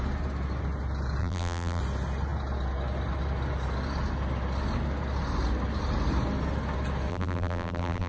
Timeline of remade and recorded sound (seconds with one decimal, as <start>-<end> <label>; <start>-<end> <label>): 0.0-1.2 recorded; 1.2-1.8 remade; 1.8-7.1 recorded; 7.1-8.1 remade